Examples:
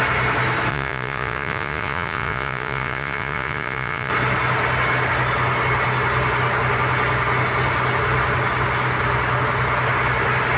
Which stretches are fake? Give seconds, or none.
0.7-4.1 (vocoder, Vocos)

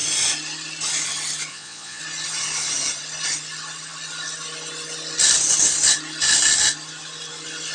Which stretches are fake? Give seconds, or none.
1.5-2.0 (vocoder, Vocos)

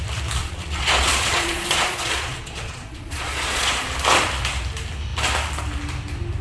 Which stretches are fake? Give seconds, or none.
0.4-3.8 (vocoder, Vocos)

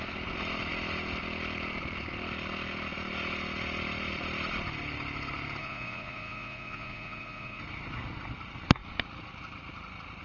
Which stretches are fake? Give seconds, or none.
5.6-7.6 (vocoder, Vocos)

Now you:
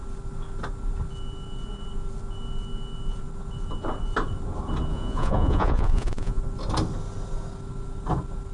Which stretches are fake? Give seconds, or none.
4.9-6.4 (vocoder, Vocos)